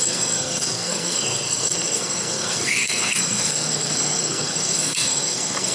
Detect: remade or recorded remade